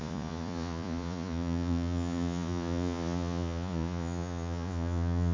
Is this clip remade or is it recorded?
remade